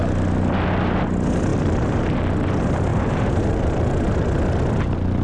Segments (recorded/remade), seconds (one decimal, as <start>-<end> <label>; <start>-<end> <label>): 0.0-1.5 recorded; 1.5-2.0 remade; 2.0-2.9 recorded; 2.9-4.1 remade; 4.1-5.2 recorded